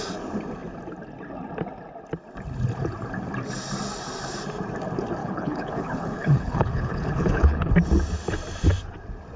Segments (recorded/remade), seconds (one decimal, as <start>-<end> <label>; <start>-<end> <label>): 0.0-5.2 recorded; 5.2-7.7 remade; 7.7-9.4 recorded